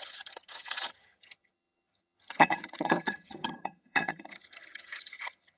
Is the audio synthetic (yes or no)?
yes